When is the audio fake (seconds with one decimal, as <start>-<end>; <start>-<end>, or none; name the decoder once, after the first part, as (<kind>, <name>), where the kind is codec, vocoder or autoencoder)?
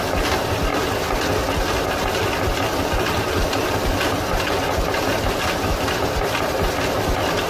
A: none